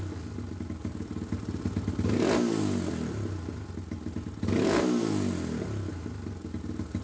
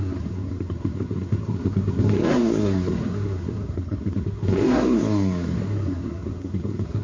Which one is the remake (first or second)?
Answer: second